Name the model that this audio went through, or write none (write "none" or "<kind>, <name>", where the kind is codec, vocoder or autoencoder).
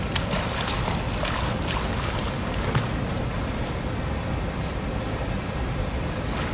none